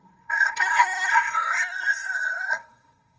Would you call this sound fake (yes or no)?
yes